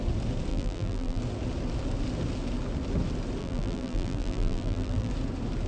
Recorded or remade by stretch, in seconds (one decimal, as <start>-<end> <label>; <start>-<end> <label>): 0.0-0.5 recorded; 0.5-1.2 remade; 1.2-3.4 recorded; 3.4-5.1 remade; 5.1-5.7 recorded